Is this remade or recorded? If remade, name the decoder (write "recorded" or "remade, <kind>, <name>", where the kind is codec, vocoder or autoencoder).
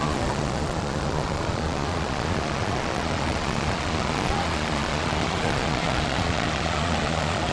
remade, vocoder, Vocos